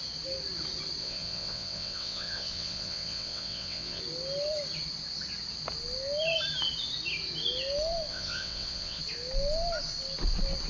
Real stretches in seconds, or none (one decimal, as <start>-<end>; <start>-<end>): 0.0-1.0; 4.0-8.1; 9.0-10.7